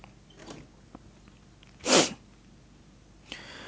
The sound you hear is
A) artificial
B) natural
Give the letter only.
B